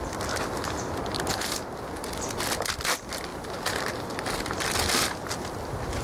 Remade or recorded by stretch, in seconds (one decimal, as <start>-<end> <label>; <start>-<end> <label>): 0.0-3.3 recorded; 3.3-3.9 remade; 3.9-6.0 recorded